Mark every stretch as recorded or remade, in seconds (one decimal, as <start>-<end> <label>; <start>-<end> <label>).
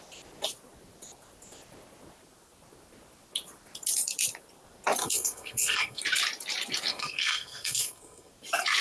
0.0-5.0 recorded; 5.0-6.0 remade; 6.0-6.9 recorded; 6.9-8.3 remade; 8.3-8.8 recorded